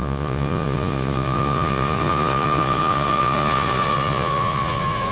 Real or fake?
fake